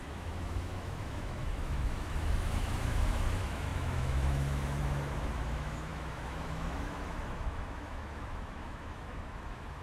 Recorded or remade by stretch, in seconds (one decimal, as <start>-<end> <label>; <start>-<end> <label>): 0.0-9.8 remade